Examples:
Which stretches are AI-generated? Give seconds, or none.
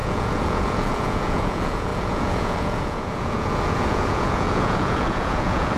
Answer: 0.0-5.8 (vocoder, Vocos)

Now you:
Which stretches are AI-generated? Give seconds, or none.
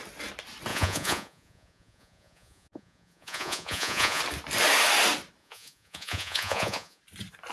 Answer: 0.7-4.2 (vocoder, Vocos); 5.4-7.0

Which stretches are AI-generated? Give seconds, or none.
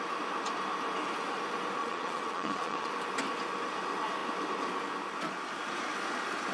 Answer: 1.8-2.9 (vocoder, Vocos)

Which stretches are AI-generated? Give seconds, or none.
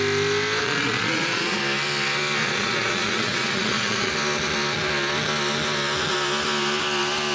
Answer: 0.6-1.6 (vocoder, Vocos); 2.4-4.1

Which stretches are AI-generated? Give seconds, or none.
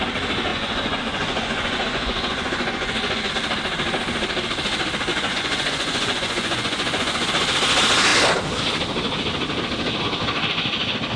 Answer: 0.5-3.3 (vocoder, Vocos); 5.1-7.3